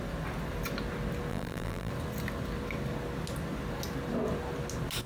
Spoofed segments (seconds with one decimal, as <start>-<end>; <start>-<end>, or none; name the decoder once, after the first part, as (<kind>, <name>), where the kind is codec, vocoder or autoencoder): 1.3-1.9 (vocoder, BigVGAN v2)